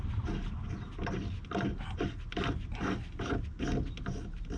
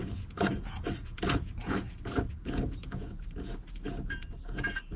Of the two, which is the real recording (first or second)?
first